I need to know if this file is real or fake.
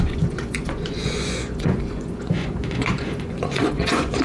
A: fake